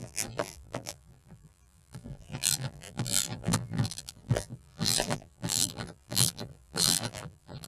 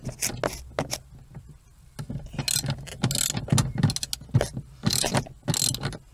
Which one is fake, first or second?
first